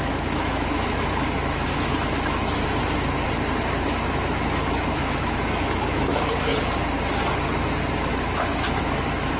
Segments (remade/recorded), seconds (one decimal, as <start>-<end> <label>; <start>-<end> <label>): 0.0-2.6 remade; 2.6-4.0 recorded; 4.0-6.5 remade; 6.5-8.1 recorded; 8.1-9.4 remade